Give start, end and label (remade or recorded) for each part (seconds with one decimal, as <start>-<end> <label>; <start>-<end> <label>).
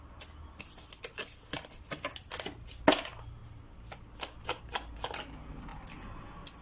0.0-6.6 recorded